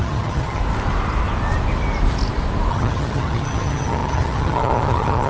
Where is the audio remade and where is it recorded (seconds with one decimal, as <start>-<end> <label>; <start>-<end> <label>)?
0.0-0.6 remade; 0.6-2.7 recorded; 2.7-5.3 remade